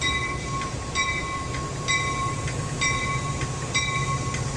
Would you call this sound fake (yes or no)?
yes